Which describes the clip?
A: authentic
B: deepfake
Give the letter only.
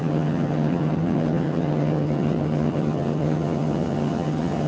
B